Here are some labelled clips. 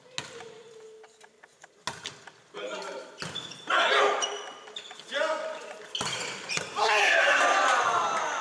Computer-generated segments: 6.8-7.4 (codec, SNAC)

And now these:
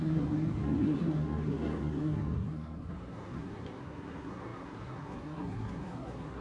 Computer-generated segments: 0.0-6.4 (codec, SNAC)

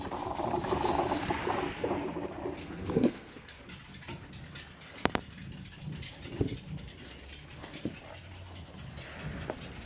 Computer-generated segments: 2.6-3.6 (codec, SNAC)

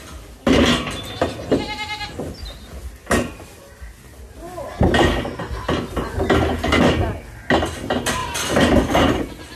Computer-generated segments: none

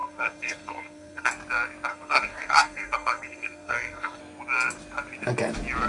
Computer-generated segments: 0.0-1.3 (codec, SNAC); 1.9-4.2

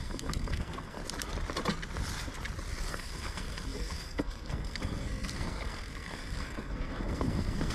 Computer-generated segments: 0.0-1.0 (codec, SNAC); 2.9-7.7

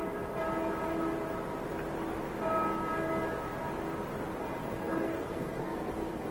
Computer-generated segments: 4.6-6.3 (codec, SNAC)